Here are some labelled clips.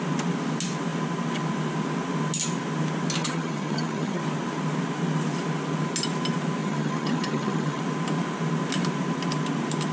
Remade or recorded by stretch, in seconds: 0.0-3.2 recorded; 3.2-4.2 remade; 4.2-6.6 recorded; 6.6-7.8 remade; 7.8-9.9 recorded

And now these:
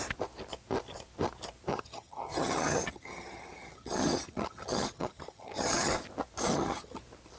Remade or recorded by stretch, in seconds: 0.0-1.7 recorded; 1.7-5.9 remade; 5.9-6.5 recorded; 6.5-7.0 remade; 7.0-7.4 recorded

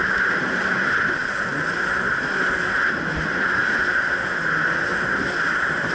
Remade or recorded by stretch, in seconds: 0.0-5.9 recorded